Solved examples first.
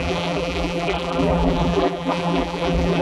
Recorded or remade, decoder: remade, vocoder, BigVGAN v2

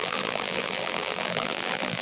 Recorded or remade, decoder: remade, vocoder, BigVGAN v2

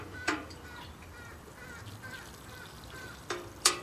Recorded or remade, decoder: remade, vocoder, BigVGAN v2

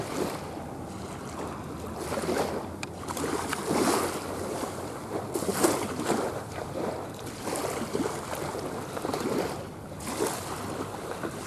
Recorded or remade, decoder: recorded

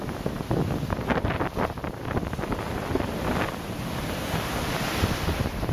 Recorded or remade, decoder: remade, vocoder, BigVGAN v2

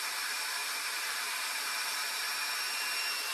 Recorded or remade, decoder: remade, vocoder, BigVGAN v2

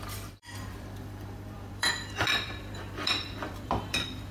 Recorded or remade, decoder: remade, vocoder, BigVGAN v2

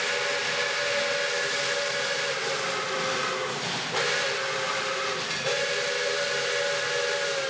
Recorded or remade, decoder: recorded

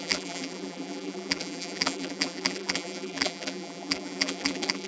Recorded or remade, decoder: remade, vocoder, BigVGAN v2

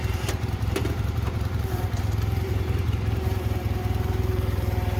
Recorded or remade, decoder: remade, vocoder, BigVGAN v2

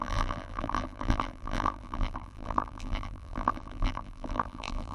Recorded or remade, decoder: remade, vocoder, BigVGAN v2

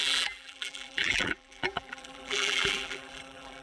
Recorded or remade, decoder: remade, vocoder, BigVGAN v2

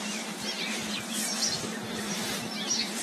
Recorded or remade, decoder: remade, vocoder, BigVGAN v2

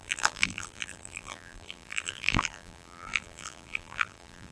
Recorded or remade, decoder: remade, vocoder, BigVGAN v2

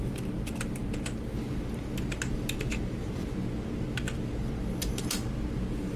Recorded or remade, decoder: recorded